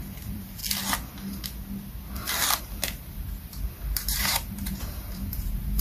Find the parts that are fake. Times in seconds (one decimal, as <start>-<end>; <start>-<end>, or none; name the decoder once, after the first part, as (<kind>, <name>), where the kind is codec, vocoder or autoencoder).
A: 0.0-0.6 (vocoder, BigVGAN v2); 2.6-5.8